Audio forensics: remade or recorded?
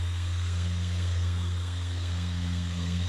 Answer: remade